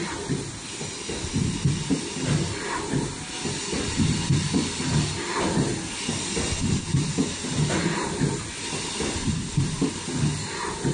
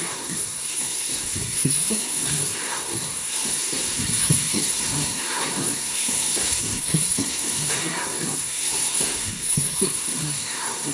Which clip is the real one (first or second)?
first